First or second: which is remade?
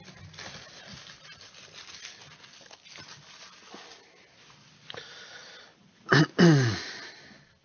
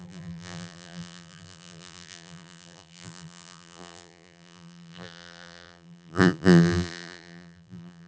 second